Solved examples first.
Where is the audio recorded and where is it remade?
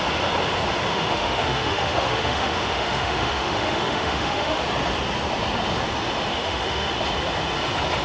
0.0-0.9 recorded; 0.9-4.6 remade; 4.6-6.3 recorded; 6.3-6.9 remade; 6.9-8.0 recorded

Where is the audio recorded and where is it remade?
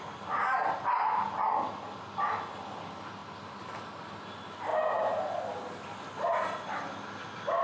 0.0-7.6 recorded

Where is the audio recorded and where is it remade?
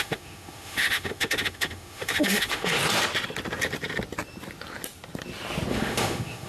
0.0-2.8 remade; 2.8-5.7 recorded; 5.7-6.5 remade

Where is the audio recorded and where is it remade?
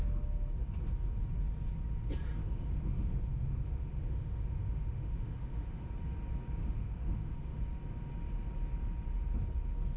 0.0-2.4 recorded; 2.4-5.9 remade; 5.9-6.6 recorded; 6.6-7.6 remade; 7.6-10.0 recorded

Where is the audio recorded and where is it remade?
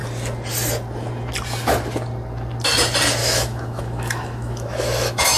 0.0-3.2 recorded; 3.2-5.4 remade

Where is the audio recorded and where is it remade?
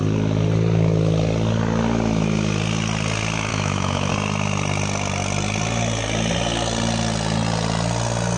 0.0-3.5 recorded; 3.5-4.1 remade; 4.1-8.4 recorded